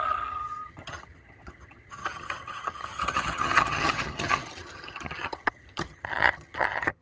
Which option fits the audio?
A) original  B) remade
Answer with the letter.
B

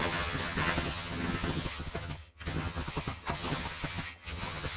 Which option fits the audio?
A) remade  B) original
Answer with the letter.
A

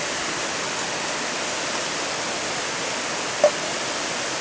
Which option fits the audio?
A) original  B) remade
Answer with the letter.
A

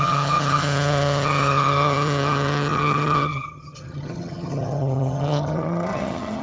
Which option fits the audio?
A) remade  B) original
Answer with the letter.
A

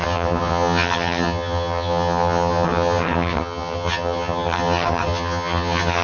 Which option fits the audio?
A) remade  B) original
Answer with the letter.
A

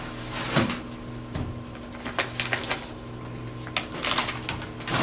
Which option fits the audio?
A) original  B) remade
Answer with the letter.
A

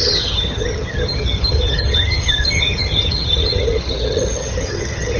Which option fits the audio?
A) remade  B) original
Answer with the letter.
A